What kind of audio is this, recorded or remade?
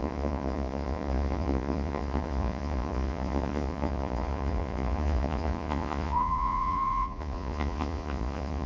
remade